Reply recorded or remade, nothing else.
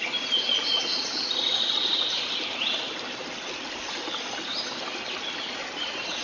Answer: recorded